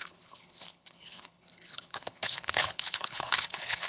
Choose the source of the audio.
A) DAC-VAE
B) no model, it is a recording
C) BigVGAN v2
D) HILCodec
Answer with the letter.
D